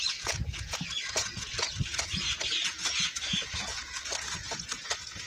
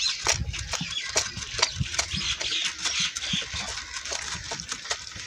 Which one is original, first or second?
second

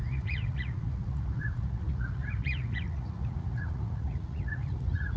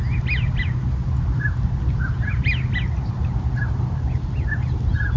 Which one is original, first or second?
second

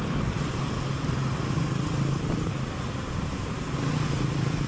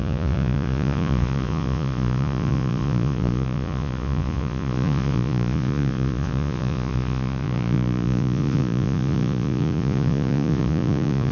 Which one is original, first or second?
first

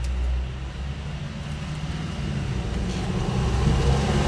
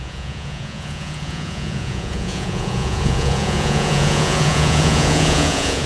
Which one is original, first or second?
first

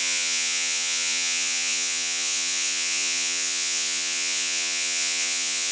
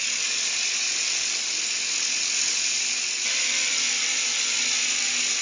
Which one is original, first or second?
second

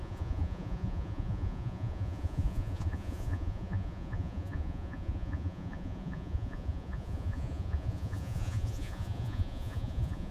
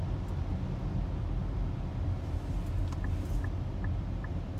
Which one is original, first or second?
second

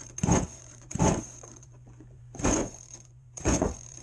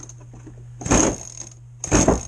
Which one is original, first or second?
second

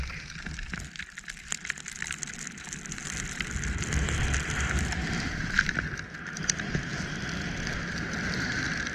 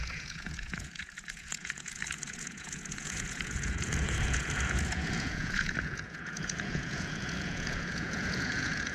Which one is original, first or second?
first